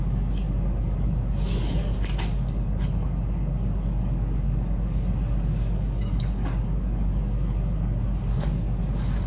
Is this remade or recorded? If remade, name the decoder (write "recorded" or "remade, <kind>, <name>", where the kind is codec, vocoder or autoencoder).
remade, codec, DAC